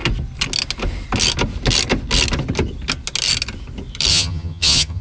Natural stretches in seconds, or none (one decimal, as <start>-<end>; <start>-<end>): 0.0-4.1